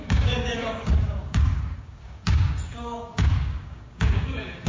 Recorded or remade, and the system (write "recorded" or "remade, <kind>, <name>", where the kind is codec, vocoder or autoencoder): remade, codec, DAC